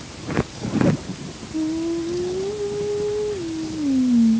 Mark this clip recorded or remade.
recorded